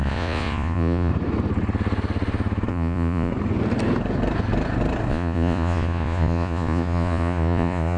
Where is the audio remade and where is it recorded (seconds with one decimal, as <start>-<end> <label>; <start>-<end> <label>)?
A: 0.0-1.1 remade; 1.1-2.7 recorded; 2.7-3.3 remade; 3.3-5.1 recorded; 5.1-8.0 remade